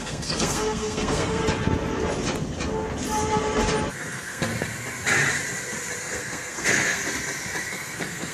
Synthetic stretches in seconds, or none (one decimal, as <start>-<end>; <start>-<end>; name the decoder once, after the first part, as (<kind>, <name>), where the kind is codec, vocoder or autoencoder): 0.0-1.4 (codec, SNAC); 3.9-4.5; 6.0-7.0; 7.7-8.3